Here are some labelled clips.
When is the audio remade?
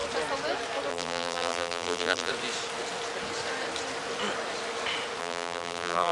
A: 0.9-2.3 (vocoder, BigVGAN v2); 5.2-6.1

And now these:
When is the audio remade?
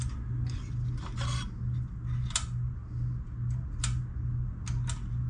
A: none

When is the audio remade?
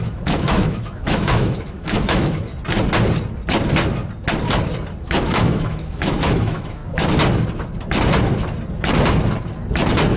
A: 0.0-2.5 (autoencoder, DAC-VAE); 5.0-6.8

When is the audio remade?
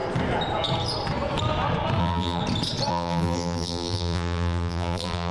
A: 2.0-2.4 (vocoder, BigVGAN v2); 2.9-5.3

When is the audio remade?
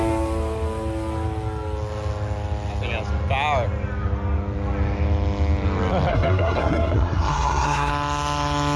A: 6.1-7.9 (codec, SNAC)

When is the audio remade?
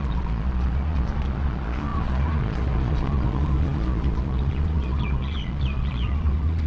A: 0.0-6.7 (vocoder, Vocos)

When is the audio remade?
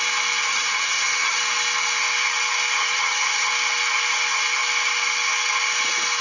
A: 0.4-1.4 (vocoder, HiFi-GAN); 2.8-3.5